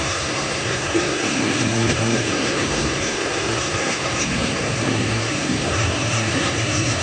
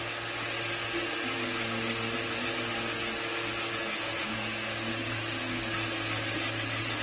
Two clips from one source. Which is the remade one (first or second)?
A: first